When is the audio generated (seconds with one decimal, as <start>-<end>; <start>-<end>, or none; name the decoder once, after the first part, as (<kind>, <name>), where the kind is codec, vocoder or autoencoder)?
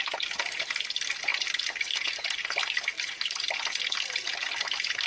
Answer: 1.3-2.2 (vocoder, BigVGAN v2); 2.9-3.5